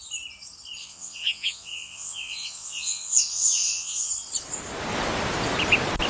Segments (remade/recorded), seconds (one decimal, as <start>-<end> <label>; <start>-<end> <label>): 0.0-0.8 recorded; 0.8-4.1 remade; 4.1-6.1 recorded